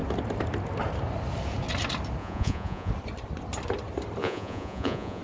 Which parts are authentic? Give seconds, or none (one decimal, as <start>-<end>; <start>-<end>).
0.0-2.2; 2.9-4.2